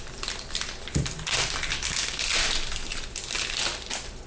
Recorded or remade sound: recorded